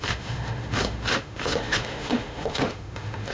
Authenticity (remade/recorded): remade